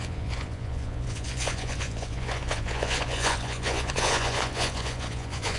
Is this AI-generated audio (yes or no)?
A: yes